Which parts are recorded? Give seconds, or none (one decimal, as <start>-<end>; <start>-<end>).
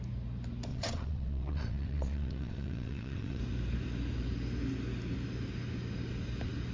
0.0-0.7; 3.4-6.7